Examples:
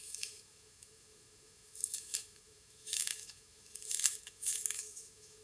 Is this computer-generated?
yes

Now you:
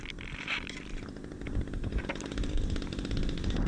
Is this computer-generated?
no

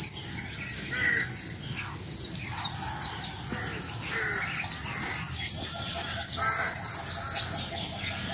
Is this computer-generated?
no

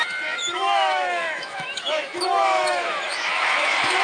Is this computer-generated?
yes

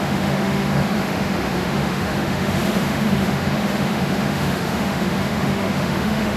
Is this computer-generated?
yes